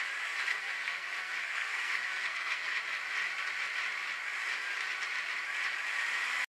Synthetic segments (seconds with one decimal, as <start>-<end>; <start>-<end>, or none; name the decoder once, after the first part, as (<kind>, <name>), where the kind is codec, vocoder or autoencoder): 0.5-2.8 (codec, SNAC)